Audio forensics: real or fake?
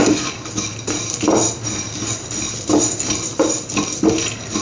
real